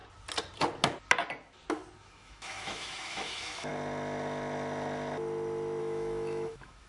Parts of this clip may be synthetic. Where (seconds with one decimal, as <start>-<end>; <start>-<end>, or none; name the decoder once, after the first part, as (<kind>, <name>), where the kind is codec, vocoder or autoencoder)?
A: 2.0-3.7 (autoencoder, DAC-VAE); 5.8-6.9